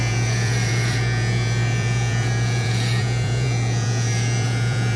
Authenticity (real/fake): fake